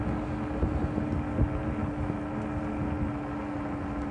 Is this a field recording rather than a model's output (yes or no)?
yes